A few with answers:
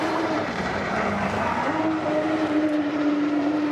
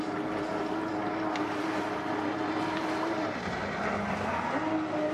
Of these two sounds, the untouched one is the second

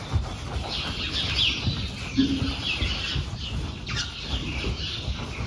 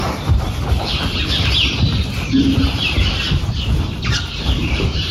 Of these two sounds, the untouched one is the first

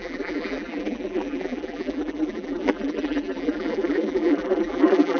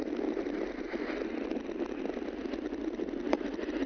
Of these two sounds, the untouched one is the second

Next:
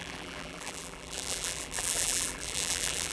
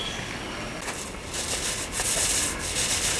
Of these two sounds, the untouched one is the second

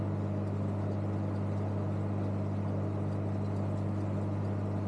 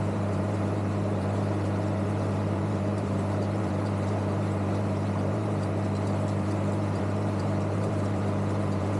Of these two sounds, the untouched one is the first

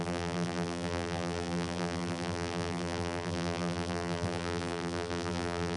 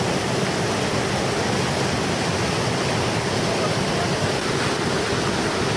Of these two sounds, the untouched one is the second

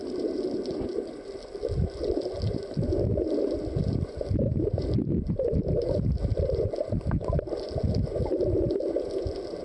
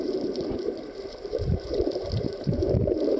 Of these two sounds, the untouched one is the first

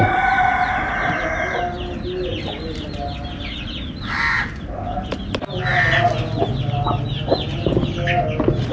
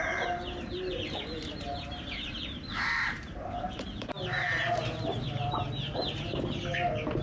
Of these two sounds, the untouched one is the first